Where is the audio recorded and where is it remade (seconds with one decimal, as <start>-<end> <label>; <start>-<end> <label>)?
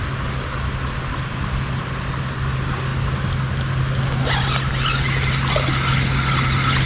0.0-6.9 recorded